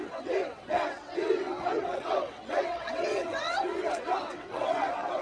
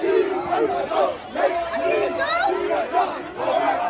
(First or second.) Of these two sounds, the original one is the second